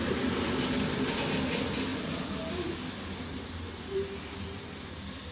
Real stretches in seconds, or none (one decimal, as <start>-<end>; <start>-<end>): 0.0-5.3